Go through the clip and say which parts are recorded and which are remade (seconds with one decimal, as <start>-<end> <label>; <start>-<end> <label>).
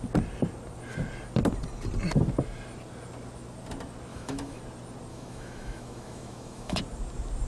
0.0-4.1 recorded; 4.1-4.6 remade; 4.6-5.1 recorded; 5.1-6.8 remade; 6.8-7.5 recorded